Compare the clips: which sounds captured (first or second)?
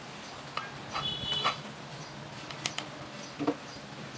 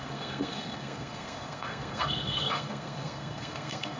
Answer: first